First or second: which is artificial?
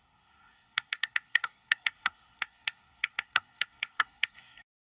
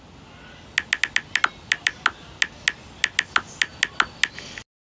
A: first